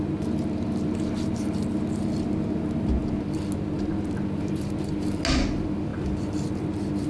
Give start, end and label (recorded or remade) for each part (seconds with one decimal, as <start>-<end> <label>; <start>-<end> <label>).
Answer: 0.0-7.1 recorded

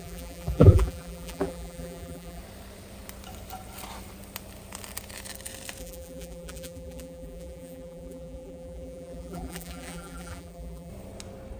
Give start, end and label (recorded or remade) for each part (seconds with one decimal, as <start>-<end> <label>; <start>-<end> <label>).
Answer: 0.0-2.4 remade; 2.4-5.8 recorded; 5.8-10.9 remade; 10.9-11.6 recorded

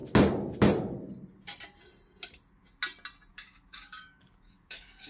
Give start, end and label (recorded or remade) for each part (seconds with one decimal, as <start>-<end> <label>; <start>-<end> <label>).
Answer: 0.0-3.3 recorded; 3.3-5.1 remade

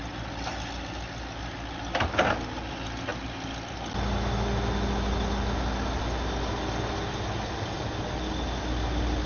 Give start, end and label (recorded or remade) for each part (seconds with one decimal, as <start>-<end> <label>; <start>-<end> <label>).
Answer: 0.0-9.3 recorded

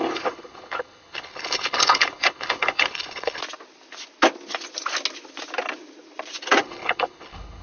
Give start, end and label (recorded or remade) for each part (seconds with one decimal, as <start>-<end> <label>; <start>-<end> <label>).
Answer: 0.0-3.4 remade; 3.4-6.6 recorded; 6.6-7.6 remade

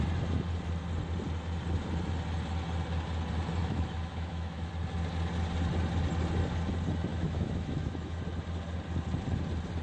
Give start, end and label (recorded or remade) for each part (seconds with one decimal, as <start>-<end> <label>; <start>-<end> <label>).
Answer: 0.0-3.6 recorded; 3.6-4.7 remade; 4.7-7.1 recorded; 7.1-8.2 remade; 8.2-9.8 recorded